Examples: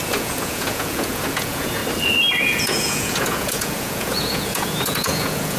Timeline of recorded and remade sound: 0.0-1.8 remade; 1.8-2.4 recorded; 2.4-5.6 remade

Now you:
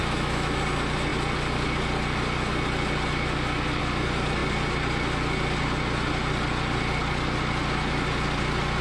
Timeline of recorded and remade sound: 0.0-0.6 remade; 0.6-8.8 recorded

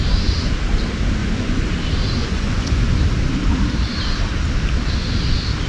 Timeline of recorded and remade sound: 0.0-1.2 recorded; 1.2-1.7 remade; 1.7-2.2 recorded; 2.2-3.0 remade; 3.0-5.7 recorded

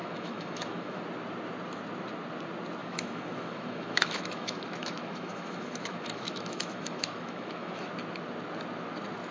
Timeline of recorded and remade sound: 0.0-1.0 remade; 1.0-2.8 recorded; 2.8-7.9 remade; 7.9-9.3 recorded

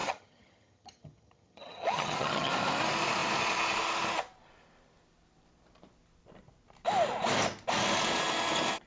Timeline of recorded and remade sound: 0.0-2.5 remade; 2.5-8.9 recorded

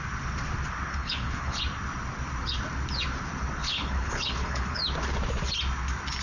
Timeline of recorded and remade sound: 0.0-0.9 recorded; 0.9-1.6 remade; 1.6-3.6 recorded; 3.6-4.8 remade; 4.8-6.2 recorded

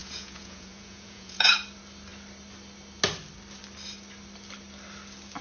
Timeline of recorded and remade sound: 0.0-1.5 remade; 1.5-5.4 recorded